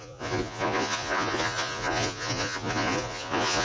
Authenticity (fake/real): fake